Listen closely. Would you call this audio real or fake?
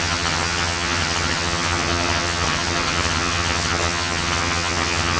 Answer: fake